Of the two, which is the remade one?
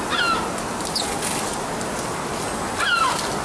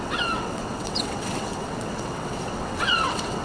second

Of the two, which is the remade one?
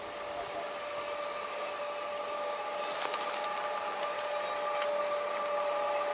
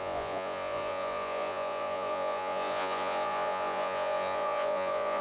second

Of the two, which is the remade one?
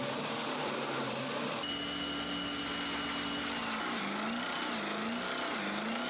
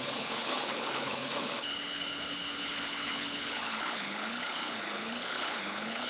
second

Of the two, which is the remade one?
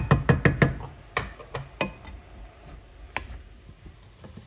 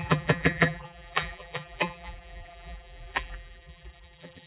second